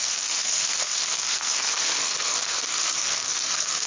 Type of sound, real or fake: fake